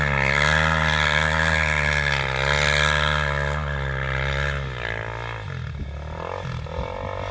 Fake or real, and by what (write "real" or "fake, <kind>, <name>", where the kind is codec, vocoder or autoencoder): real